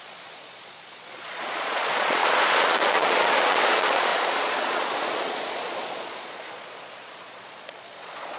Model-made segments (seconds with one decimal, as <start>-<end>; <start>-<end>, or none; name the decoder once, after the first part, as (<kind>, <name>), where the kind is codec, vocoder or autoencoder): 0.0-8.4 (vocoder, Vocos)

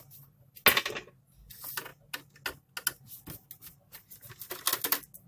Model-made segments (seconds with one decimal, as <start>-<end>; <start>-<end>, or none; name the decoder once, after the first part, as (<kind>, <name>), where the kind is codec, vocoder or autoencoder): none

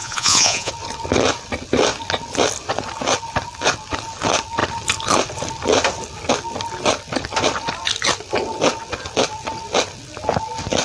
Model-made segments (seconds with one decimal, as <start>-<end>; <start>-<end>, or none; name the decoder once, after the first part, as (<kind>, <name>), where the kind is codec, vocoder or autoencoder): 0.0-0.7 (vocoder, Vocos)

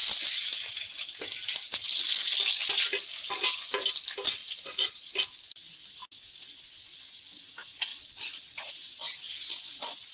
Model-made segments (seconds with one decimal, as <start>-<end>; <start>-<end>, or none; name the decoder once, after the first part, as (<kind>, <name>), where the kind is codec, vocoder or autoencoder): 4.4-5.1 (vocoder, Vocos); 7.9-8.7

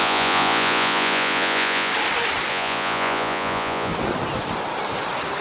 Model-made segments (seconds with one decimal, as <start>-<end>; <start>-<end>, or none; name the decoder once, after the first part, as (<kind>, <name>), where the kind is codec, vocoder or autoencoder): 0.0-1.9 (vocoder, Vocos); 2.5-3.9

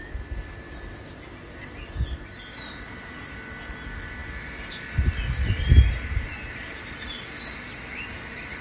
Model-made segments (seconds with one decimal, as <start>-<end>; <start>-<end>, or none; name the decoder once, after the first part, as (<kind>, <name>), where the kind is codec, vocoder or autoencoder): none